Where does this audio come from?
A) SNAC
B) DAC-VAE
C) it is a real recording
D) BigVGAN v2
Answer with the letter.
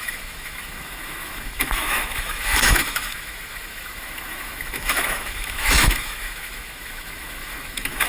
B